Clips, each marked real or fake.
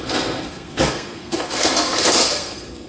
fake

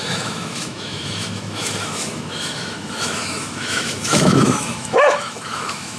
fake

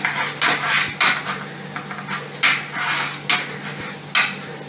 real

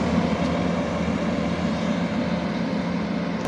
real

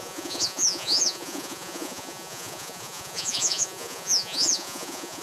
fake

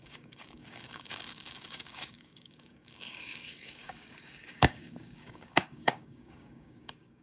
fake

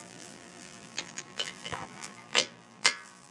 fake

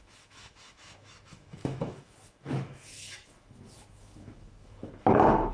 fake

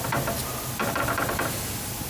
real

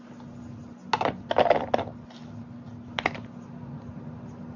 real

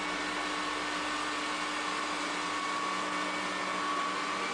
real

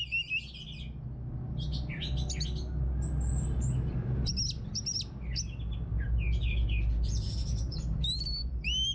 real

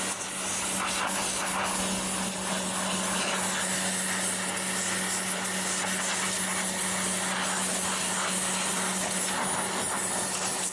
real